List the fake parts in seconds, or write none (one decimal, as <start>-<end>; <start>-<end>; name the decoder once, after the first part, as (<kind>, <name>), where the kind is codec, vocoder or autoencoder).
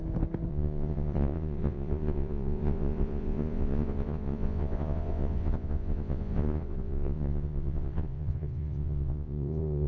0.5-9.9 (vocoder, Vocos)